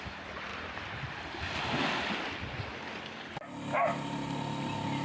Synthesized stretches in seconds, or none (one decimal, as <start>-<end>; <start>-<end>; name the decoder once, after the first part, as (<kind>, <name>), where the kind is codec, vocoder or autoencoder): none